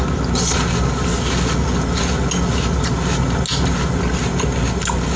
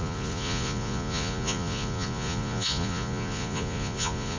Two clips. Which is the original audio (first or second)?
first